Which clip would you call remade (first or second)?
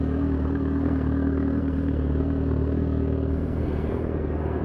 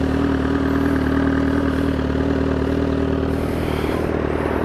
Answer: first